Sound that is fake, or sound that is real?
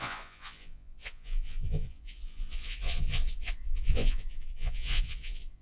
fake